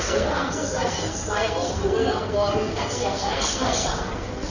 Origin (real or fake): fake